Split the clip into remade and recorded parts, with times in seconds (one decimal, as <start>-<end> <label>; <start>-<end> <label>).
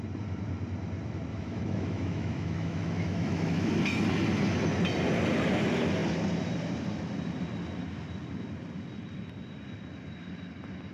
0.0-1.3 recorded; 1.3-3.7 remade; 3.7-10.9 recorded